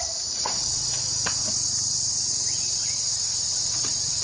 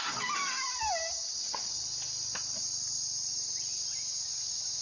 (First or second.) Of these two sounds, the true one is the second